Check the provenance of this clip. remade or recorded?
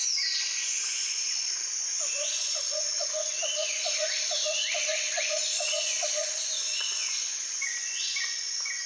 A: remade